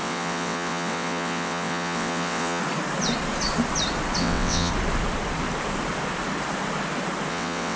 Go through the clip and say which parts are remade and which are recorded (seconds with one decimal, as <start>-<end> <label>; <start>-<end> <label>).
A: 0.0-2.6 remade; 2.6-4.2 recorded; 4.2-4.7 remade; 4.7-7.3 recorded; 7.3-7.8 remade